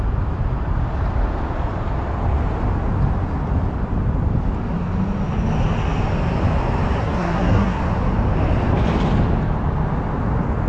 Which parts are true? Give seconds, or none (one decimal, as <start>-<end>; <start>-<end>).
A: 0.0-7.0; 7.8-10.7